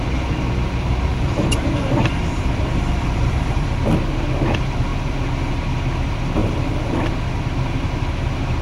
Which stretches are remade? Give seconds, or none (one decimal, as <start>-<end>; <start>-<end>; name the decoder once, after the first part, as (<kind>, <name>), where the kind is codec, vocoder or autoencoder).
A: 1.1-3.8 (vocoder, BigVGAN v2); 6.4-7.1